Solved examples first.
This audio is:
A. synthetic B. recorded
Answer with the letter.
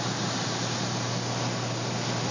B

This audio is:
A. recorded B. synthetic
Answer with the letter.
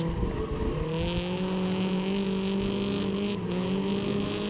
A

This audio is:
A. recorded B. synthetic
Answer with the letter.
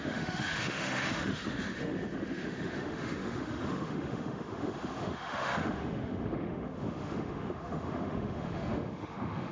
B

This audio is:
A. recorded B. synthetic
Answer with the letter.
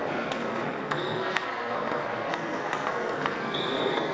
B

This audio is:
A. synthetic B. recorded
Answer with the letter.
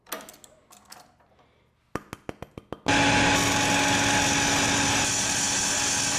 B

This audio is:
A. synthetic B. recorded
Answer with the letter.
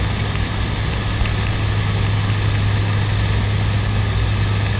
B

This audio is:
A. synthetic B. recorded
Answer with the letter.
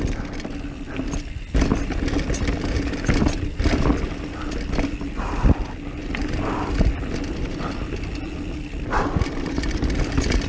B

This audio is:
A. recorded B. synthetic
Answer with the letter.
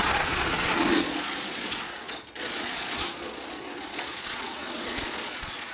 B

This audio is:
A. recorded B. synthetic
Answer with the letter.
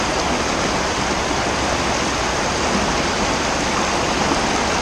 A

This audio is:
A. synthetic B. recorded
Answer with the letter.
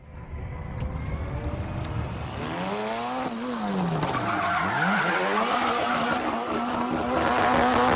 B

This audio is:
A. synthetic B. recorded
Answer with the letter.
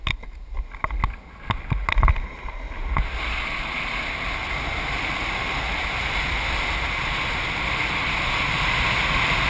B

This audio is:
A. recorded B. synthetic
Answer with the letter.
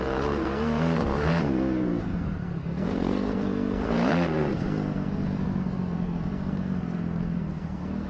B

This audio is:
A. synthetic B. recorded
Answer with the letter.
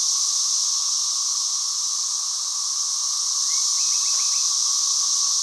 B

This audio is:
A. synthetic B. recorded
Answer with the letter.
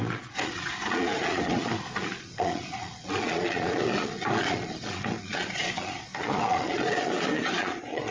A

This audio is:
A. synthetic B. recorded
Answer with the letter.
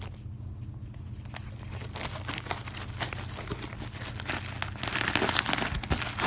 B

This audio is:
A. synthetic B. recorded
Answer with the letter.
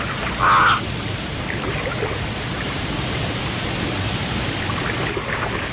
A